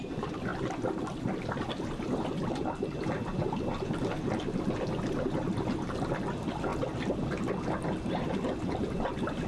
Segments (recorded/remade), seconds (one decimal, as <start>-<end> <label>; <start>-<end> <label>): 0.0-9.5 recorded